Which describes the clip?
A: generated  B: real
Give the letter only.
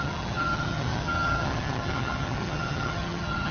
A